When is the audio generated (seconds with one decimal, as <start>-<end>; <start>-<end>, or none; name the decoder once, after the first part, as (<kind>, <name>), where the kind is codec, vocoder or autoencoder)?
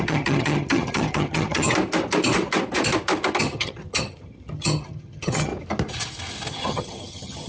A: 0.0-1.7 (vocoder, HiFi-GAN); 3.4-5.5; 6.5-7.5